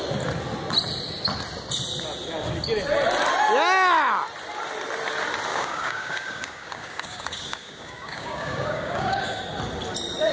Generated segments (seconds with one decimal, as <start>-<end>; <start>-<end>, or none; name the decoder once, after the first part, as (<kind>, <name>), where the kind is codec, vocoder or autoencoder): 5.5-9.4 (codec, DAC)